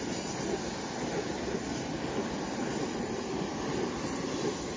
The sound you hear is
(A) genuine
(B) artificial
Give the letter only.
A